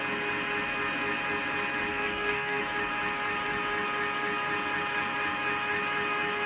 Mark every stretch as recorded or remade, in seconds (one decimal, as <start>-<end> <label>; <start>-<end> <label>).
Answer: 0.0-1.9 recorded; 1.9-2.6 remade; 2.6-6.5 recorded